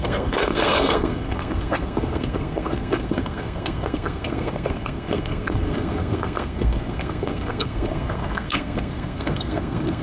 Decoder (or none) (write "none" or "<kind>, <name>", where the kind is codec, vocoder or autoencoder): codec, SNAC